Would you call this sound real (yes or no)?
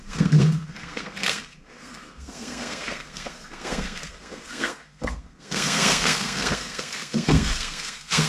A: no